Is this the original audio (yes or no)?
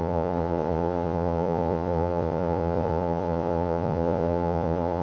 no